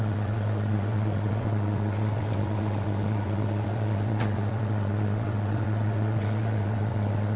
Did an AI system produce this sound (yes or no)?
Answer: yes